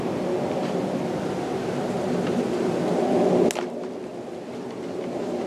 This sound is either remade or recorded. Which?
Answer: recorded